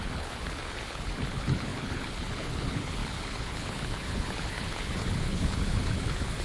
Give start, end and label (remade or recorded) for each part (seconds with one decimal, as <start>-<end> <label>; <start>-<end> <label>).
0.0-6.4 remade